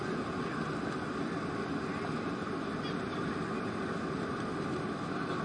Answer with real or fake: real